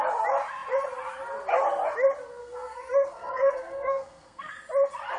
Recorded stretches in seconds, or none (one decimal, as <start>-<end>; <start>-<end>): 0.0-2.4; 4.5-5.2